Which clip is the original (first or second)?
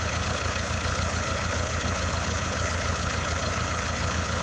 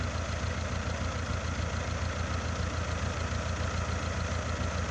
second